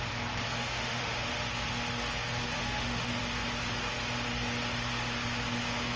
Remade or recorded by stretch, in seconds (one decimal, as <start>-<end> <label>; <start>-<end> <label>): 0.0-0.6 recorded; 0.6-1.3 remade; 1.3-2.6 recorded; 2.6-3.2 remade; 3.2-6.0 recorded